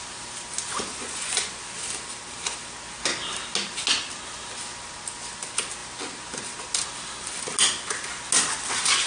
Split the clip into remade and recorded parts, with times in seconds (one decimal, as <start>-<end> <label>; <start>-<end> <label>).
0.0-0.9 recorded; 0.9-1.6 remade; 1.6-9.1 recorded